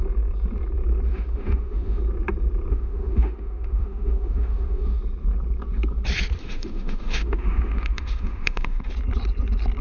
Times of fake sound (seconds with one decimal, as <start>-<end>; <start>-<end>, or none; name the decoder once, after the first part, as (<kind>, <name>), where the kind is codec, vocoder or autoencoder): 1.1-2.0 (autoencoder, DAC-VAE); 2.7-5.0; 6.4-8.9